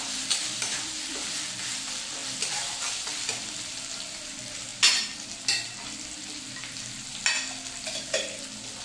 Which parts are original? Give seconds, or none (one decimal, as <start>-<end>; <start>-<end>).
4.7-8.8

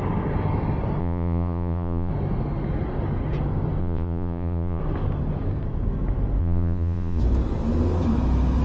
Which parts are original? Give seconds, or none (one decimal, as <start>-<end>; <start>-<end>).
0.0-1.0; 2.1-3.8; 4.8-6.4; 7.2-8.6